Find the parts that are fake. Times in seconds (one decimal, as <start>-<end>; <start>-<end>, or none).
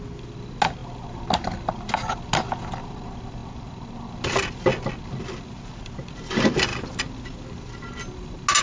none